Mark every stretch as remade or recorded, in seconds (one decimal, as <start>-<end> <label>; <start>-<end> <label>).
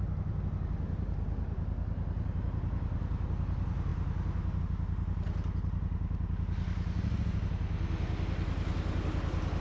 0.0-9.6 recorded